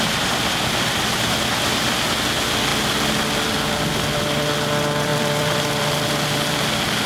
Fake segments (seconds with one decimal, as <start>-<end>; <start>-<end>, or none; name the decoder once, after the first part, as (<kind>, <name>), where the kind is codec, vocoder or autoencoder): 5.1-5.7 (vocoder, BigVGAN v2)